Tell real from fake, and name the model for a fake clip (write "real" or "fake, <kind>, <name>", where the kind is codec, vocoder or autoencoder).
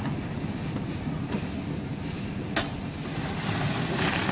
real